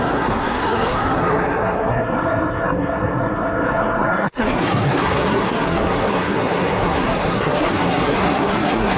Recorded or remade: remade